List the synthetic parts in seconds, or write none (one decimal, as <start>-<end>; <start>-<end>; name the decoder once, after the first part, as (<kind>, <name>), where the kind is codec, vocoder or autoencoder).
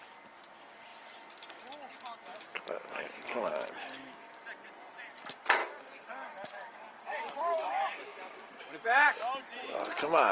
2.3-4.4 (codec, DAC); 5.6-8.6